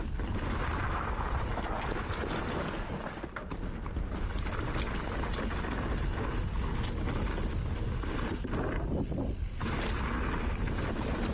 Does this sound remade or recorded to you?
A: recorded